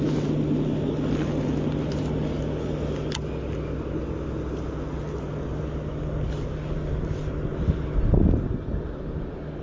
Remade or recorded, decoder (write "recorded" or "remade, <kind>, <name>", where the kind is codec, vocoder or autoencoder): recorded